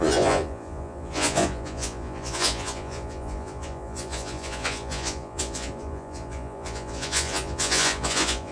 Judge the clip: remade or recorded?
remade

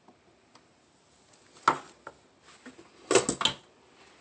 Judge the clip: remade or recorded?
recorded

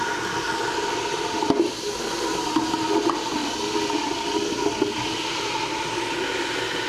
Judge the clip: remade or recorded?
recorded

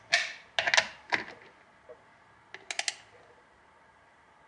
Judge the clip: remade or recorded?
recorded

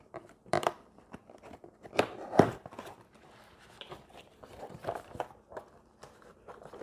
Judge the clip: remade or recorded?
remade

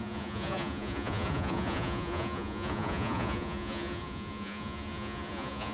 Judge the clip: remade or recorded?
remade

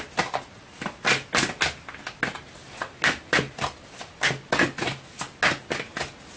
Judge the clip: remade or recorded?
recorded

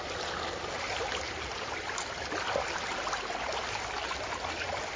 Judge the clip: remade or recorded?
recorded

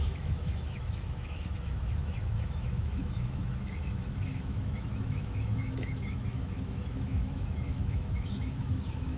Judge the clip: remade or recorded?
remade